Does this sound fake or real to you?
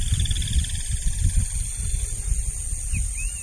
real